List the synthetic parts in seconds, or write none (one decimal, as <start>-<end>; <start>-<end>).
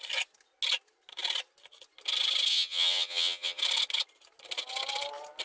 2.5-3.6